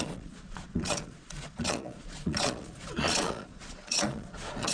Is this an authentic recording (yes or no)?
no